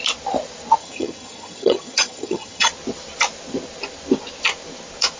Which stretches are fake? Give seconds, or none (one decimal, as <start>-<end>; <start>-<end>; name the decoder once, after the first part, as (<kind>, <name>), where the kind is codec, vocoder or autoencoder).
0.8-2.7 (vocoder, HiFi-GAN)